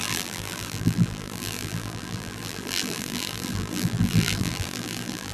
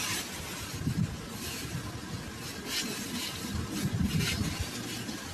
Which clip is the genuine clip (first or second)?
second